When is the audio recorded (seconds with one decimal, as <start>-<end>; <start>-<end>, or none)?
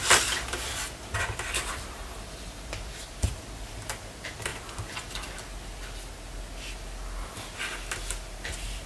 0.0-8.9